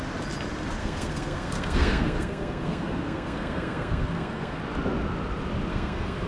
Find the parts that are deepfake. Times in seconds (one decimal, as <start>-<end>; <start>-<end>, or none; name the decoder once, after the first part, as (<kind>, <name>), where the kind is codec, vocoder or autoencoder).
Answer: 0.8-4.6 (codec, SNAC); 5.7-6.3